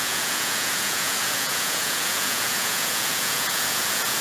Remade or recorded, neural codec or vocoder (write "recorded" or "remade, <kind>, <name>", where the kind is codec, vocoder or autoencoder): remade, vocoder, Vocos